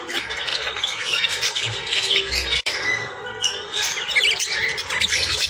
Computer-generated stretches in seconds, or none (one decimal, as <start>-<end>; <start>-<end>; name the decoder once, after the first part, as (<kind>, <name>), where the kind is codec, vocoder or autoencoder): 0.0-3.9 (codec, SNAC); 5.1-5.5